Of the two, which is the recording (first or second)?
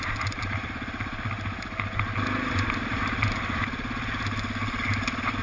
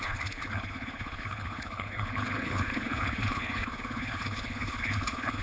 first